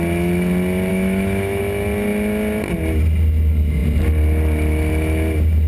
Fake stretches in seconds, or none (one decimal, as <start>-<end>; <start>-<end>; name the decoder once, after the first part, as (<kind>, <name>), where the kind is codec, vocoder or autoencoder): 0.9-1.6 (autoencoder, DAC-VAE)